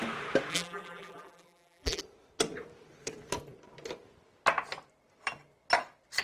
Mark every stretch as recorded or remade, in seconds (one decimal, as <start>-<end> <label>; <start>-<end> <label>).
0.0-0.5 recorded; 0.5-2.0 remade; 2.0-6.2 recorded